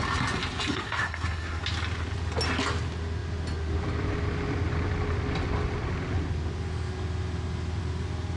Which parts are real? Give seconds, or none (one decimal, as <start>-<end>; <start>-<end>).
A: 0.0-0.7; 1.6-8.4